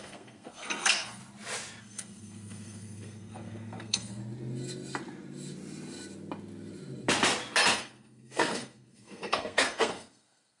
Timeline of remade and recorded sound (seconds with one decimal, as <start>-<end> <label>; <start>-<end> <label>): 0.0-1.2 remade; 1.2-1.8 recorded; 1.8-4.2 remade; 4.2-7.7 recorded; 7.7-10.6 remade